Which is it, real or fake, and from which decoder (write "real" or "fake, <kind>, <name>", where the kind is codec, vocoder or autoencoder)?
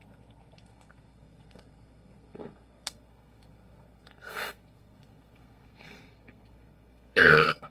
fake, codec, SNAC